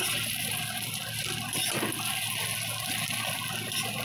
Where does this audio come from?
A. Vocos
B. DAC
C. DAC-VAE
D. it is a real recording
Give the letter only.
D